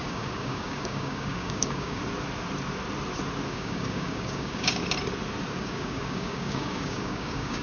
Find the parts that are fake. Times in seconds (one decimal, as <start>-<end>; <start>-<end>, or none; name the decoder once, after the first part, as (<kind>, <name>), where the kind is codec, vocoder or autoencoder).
0.0-2.0 (codec, DAC); 3.5-4.8; 5.6-7.6